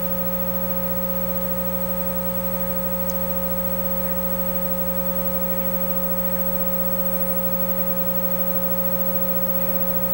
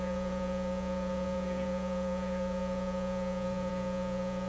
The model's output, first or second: second